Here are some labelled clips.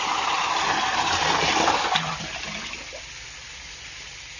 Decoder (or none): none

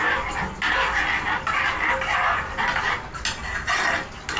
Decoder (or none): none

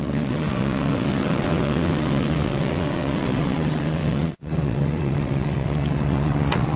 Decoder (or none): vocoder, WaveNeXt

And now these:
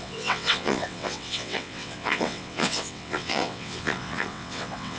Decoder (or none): vocoder, WaveNeXt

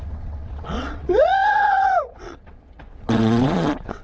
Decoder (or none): vocoder, WaveNeXt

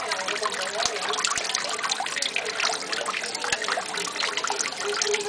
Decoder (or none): none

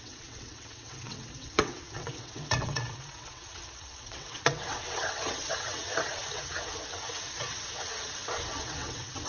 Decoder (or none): vocoder, WaveNeXt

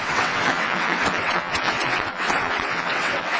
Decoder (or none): vocoder, WaveNeXt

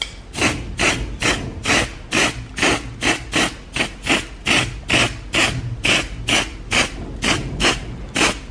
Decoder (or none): none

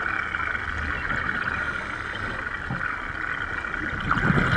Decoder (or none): none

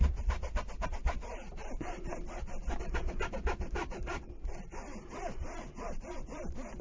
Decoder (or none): none